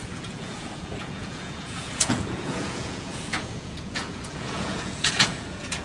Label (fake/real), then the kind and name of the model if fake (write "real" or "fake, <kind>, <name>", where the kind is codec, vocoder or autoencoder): fake, vocoder, Vocos